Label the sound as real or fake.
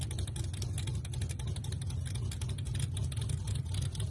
real